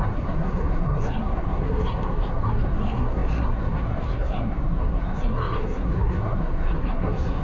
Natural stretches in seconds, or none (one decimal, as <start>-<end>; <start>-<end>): none